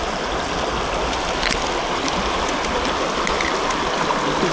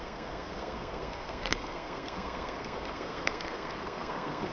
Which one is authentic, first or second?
first